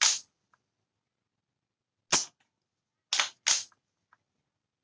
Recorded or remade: recorded